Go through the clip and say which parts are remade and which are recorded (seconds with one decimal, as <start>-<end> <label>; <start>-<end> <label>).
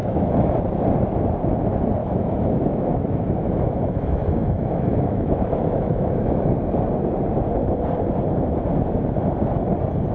0.0-0.6 remade; 0.6-2.0 recorded; 2.0-6.5 remade; 6.5-10.1 recorded